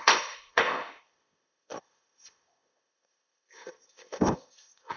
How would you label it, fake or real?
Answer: fake